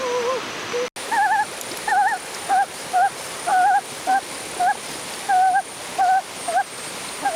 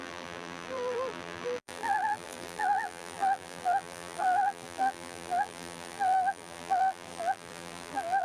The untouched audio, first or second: first